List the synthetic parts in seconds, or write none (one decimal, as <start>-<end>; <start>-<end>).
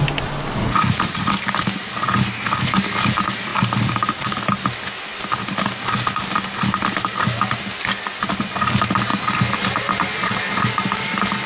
0.6-1.3